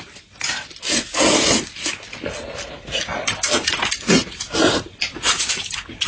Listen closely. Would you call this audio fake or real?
real